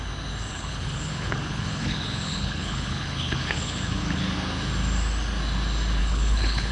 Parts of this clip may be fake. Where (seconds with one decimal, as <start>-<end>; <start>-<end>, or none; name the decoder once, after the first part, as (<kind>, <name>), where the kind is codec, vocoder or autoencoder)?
0.5-4.2 (codec, HILCodec); 6.0-6.7

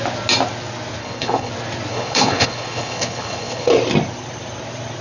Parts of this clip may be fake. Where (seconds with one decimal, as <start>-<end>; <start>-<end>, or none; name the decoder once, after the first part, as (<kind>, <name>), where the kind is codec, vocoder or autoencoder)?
1.0-1.5 (codec, HILCodec); 1.9-3.7

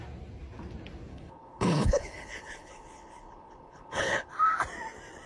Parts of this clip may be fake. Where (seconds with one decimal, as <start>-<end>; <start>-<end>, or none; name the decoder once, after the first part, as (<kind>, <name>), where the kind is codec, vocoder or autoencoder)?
1.1-4.3 (codec, HILCodec)

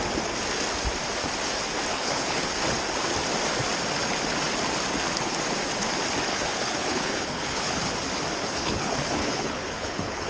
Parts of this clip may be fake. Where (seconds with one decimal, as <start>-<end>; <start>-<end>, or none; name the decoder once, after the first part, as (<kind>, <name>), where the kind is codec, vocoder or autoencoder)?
1.9-2.6 (codec, HILCodec); 6.3-7.9; 8.4-10.3

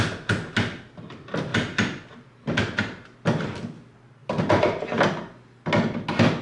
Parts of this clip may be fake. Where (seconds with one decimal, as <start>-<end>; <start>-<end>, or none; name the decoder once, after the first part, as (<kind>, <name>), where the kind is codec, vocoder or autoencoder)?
none

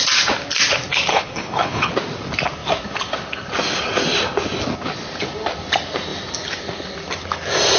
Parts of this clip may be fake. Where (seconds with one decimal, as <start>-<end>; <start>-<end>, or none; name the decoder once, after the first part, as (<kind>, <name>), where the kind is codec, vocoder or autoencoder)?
1.1-1.9 (codec, HILCodec)

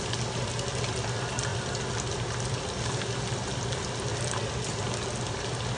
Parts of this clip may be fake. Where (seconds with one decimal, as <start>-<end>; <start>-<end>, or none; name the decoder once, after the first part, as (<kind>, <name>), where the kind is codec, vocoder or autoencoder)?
none

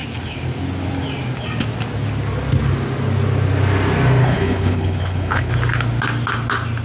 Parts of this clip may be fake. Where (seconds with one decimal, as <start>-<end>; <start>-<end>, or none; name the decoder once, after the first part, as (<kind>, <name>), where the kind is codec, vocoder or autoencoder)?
4.2-5.5 (codec, HILCodec)